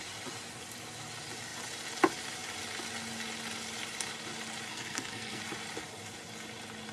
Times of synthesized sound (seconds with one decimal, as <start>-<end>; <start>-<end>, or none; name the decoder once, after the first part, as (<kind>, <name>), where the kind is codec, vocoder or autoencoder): 4.7-5.4 (codec, SNAC)